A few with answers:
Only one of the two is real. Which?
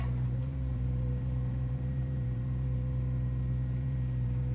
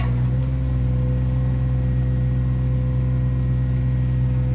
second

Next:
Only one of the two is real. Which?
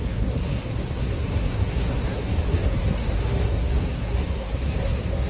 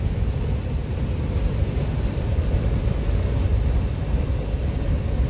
second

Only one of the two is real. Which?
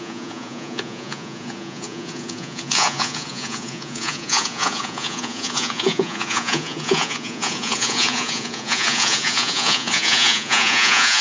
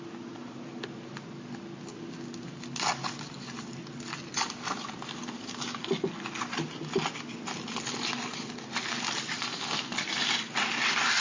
second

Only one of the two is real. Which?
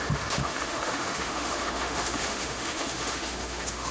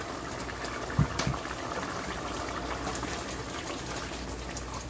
second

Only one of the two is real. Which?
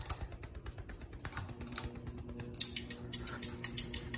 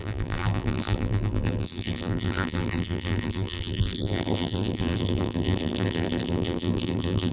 first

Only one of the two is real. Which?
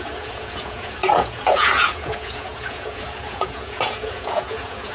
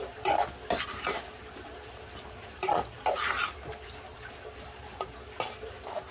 second